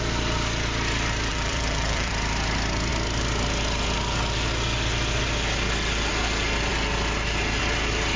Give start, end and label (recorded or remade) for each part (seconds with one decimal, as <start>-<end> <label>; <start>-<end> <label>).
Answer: 0.0-1.3 recorded; 1.3-2.1 remade; 2.1-8.2 recorded